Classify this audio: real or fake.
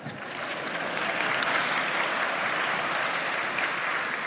real